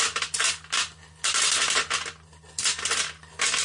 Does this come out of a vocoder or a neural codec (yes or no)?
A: no